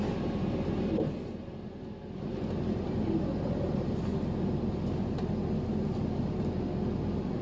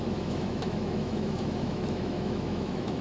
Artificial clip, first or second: second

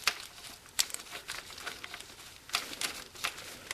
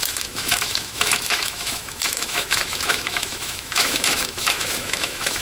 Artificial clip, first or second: second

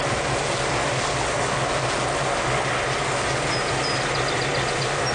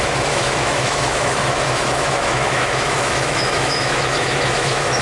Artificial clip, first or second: second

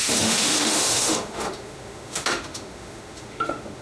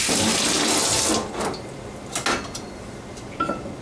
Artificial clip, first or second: first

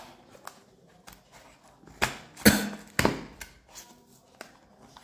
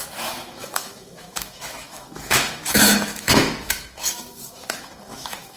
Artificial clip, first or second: second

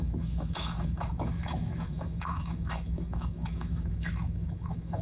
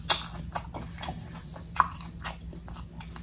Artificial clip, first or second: first